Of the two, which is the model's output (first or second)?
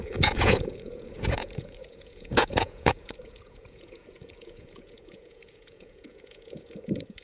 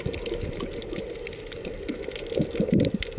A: first